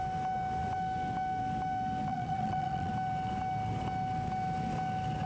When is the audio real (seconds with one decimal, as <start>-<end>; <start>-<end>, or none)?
0.0-2.1; 2.9-5.3